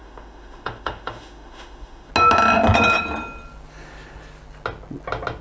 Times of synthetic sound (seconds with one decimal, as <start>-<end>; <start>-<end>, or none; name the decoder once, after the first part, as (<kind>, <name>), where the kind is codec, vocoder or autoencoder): 0.0-2.1 (autoencoder, DAC-VAE)

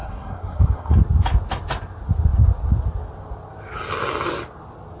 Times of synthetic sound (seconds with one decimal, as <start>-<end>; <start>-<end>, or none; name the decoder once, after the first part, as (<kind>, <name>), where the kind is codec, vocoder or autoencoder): 0.0-1.0 (codec, SNAC)

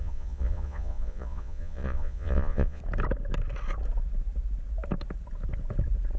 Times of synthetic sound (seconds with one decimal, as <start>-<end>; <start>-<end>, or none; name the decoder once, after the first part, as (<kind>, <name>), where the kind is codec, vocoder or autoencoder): 0.0-2.8 (vocoder, Vocos)

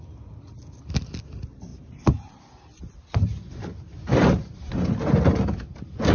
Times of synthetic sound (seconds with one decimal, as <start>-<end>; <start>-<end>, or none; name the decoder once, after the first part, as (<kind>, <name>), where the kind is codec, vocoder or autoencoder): 1.7-4.8 (vocoder, BigVGAN v2)

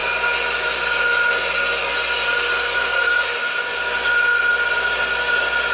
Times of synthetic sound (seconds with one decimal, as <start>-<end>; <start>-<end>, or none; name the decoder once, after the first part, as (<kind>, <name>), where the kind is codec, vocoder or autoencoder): none

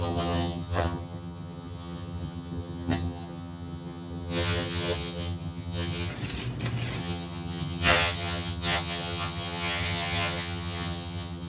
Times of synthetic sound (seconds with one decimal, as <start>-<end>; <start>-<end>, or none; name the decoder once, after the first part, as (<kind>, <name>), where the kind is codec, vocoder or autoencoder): 0.0-6.1 (vocoder, HiFi-GAN); 7.0-11.5

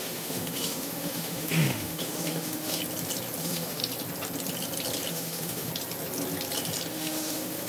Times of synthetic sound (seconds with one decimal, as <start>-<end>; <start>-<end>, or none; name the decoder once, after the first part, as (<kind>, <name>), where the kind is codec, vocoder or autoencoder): 0.0-2.8 (autoencoder, DAC-VAE); 3.4-3.8; 5.1-5.7; 6.9-7.7